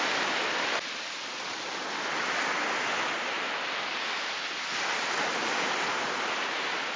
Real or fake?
real